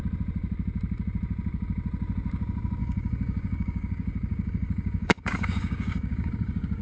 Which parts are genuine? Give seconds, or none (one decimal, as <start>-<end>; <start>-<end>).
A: 0.0-2.8